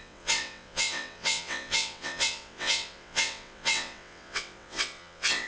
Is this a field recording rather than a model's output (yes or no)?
no